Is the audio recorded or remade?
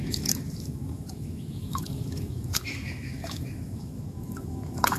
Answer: remade